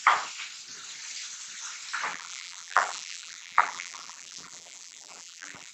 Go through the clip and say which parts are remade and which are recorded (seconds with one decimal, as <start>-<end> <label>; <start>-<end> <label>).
0.0-2.1 recorded; 2.1-5.7 remade